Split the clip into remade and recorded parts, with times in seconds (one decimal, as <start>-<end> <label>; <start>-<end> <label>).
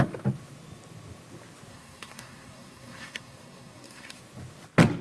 0.0-1.7 recorded; 1.7-4.2 remade; 4.2-5.0 recorded